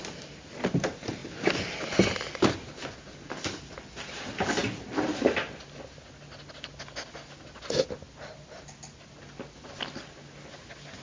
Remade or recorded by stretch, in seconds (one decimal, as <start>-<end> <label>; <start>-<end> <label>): 0.0-11.0 recorded